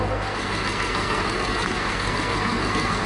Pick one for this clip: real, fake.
fake